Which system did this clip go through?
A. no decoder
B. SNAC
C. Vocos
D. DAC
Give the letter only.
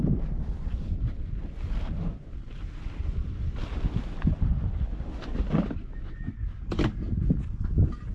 A